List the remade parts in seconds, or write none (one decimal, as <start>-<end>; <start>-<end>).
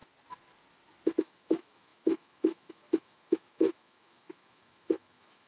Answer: 1.2-5.5